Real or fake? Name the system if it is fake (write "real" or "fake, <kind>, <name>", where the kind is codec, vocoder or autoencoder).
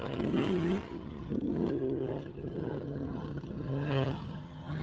fake, vocoder, HiFi-GAN